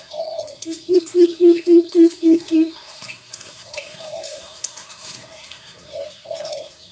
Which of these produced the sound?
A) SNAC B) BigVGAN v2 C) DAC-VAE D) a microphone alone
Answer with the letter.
A